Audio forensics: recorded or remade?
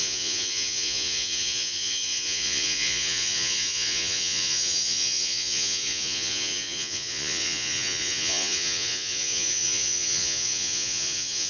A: remade